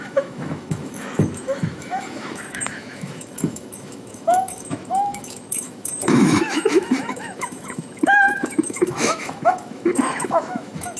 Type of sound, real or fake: fake